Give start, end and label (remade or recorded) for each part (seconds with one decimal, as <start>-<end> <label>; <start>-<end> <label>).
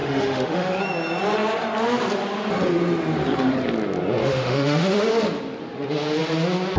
0.0-0.8 remade; 0.8-4.2 recorded; 4.2-5.1 remade; 5.1-6.8 recorded